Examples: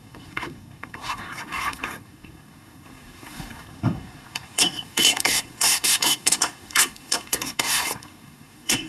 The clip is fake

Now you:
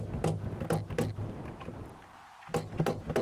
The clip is real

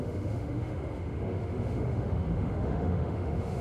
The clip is fake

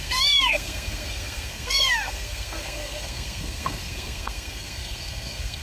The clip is fake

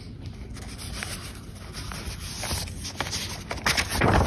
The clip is real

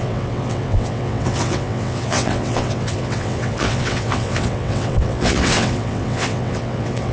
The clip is fake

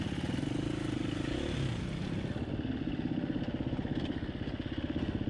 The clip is real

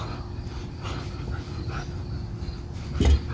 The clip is real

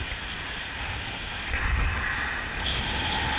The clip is real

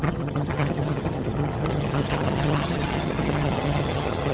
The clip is fake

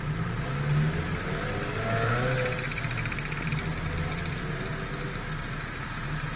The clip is real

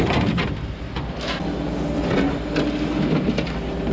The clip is real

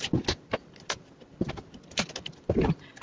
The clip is real